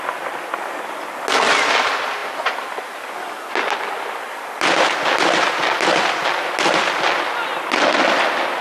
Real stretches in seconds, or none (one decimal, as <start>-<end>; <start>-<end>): 0.0-8.6